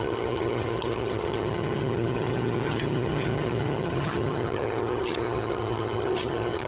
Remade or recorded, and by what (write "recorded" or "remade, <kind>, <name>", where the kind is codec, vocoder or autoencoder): remade, vocoder, HiFi-GAN